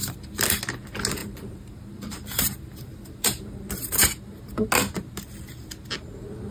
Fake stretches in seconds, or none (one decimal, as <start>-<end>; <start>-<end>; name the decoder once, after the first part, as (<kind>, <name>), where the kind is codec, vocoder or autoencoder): 0.0-0.6 (vocoder, BigVGAN v2); 1.2-4.2